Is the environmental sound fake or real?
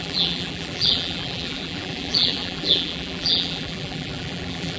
fake